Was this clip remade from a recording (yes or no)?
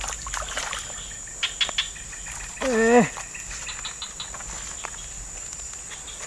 no